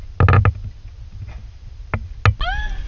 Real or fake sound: real